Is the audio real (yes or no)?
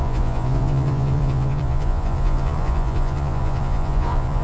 no